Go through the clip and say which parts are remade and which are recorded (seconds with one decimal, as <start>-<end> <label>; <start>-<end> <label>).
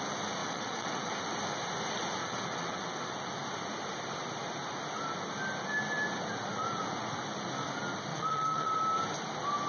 0.0-0.4 recorded; 0.4-1.1 remade; 1.1-2.2 recorded; 2.2-3.1 remade; 3.1-8.1 recorded; 8.1-8.8 remade; 8.8-9.7 recorded